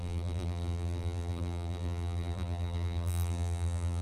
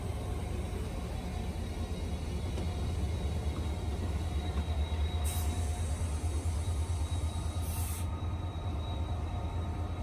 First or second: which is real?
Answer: second